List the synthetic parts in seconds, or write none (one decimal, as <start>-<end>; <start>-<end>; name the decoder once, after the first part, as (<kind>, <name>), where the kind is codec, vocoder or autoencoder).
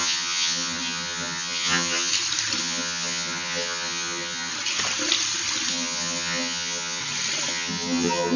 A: 0.0-2.1 (vocoder, HiFi-GAN); 2.6-4.5; 5.7-7.0; 7.5-8.4